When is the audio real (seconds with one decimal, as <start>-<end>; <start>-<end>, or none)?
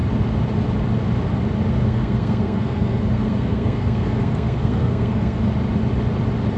0.0-1.8; 5.4-6.6